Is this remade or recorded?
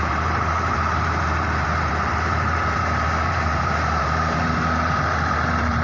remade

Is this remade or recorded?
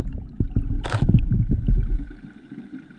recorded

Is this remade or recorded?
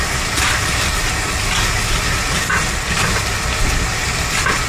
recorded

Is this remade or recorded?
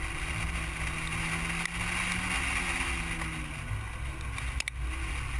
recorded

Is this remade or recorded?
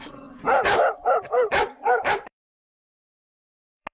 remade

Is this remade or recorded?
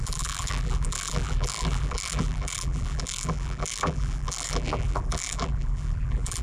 remade